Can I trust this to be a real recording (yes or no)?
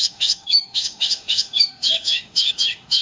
no